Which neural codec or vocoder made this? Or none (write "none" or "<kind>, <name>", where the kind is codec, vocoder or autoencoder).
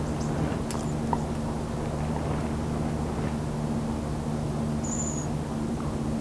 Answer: none